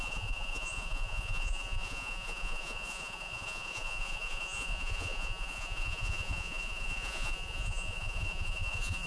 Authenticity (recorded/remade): remade